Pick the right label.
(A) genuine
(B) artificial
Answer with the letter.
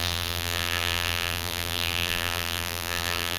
B